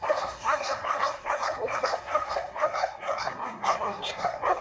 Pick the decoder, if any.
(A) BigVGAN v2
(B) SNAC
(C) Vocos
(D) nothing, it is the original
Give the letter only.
B